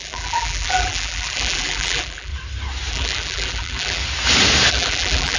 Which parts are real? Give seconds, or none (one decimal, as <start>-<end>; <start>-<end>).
2.3-2.9; 4.0-4.7

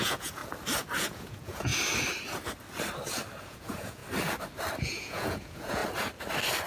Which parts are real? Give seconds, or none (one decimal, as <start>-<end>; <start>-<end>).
0.4-1.0; 1.7-3.4; 4.0-4.8; 5.8-6.7